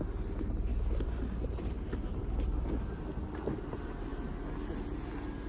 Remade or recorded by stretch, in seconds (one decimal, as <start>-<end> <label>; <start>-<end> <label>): 0.0-5.5 recorded